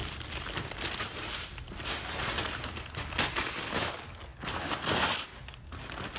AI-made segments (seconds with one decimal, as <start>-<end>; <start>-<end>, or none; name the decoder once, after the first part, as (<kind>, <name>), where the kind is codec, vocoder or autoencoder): none